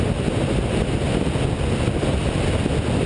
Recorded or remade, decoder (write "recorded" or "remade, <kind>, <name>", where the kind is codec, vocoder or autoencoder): recorded